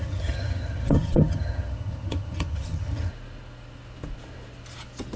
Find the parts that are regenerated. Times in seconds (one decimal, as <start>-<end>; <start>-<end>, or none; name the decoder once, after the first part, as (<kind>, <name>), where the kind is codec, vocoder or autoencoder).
0.0-3.1 (vocoder, HiFi-GAN)